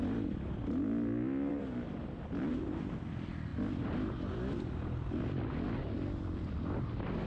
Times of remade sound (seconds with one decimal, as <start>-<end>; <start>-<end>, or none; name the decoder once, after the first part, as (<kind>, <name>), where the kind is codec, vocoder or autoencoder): none